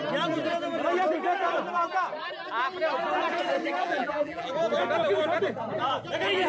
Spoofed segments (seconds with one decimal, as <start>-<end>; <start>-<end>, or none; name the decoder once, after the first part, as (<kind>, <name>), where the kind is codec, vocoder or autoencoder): 3.8-4.5 (vocoder, BigVGAN v2)